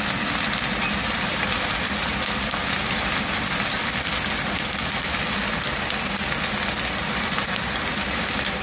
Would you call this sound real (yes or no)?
yes